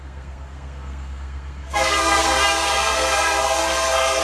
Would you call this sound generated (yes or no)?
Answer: yes